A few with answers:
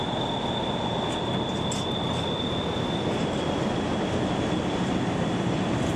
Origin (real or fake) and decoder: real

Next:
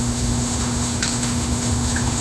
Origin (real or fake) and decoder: fake, autoencoder, DAC-VAE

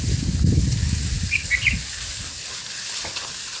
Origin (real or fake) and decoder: real